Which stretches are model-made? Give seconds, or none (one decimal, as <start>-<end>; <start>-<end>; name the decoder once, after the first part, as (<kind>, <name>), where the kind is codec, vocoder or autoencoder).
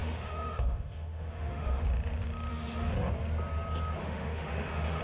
0.0-1.8 (autoencoder, DAC-VAE); 2.5-3.1; 4.0-5.0